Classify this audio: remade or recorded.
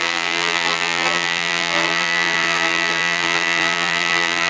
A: remade